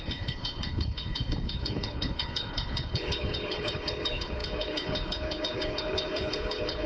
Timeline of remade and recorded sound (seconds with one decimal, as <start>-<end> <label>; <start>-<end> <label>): 0.0-6.9 remade